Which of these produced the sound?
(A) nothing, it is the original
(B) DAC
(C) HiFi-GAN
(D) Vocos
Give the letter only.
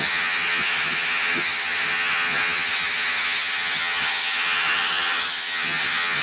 C